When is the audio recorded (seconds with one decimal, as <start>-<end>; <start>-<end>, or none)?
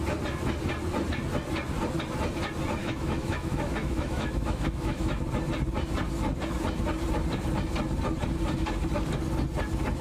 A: 0.0-2.8; 5.2-10.0